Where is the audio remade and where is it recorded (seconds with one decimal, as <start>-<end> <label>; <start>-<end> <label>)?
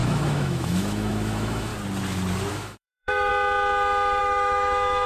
0.0-1.7 remade; 1.7-2.5 recorded; 2.5-3.3 remade; 3.3-4.2 recorded; 4.2-5.1 remade